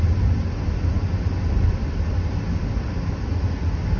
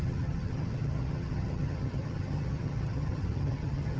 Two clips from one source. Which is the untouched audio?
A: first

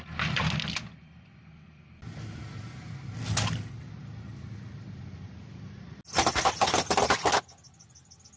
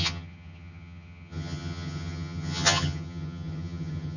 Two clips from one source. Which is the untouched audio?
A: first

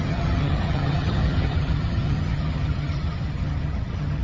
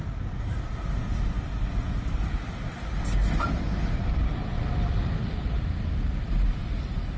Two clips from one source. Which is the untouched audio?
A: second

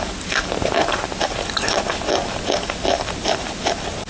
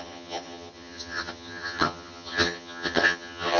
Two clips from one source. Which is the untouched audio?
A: first